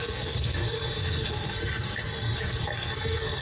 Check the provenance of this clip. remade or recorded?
remade